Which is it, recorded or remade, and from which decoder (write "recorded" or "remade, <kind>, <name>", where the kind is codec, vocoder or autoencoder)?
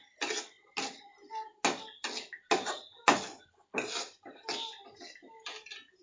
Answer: recorded